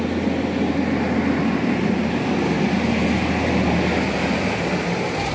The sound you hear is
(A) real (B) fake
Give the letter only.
A